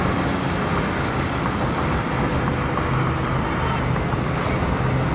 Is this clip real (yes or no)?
yes